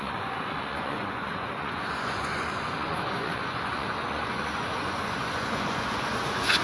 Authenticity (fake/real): fake